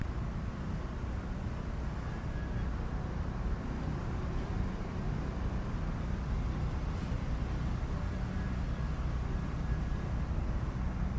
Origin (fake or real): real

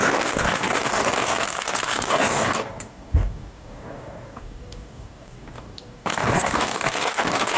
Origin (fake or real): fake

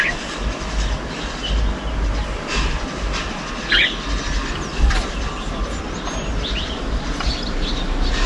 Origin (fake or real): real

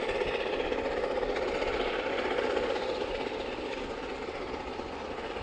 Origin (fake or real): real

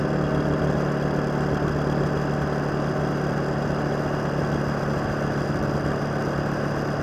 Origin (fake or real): real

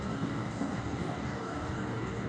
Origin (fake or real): fake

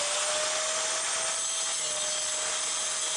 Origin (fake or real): real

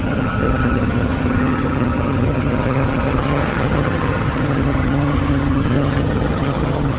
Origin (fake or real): fake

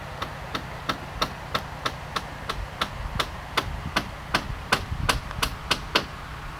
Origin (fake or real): real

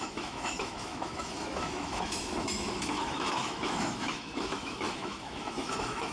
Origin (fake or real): fake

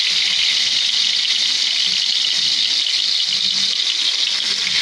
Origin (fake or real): real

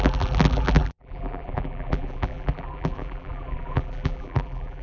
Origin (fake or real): fake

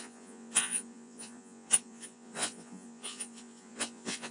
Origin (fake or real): fake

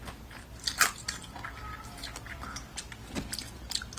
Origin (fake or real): real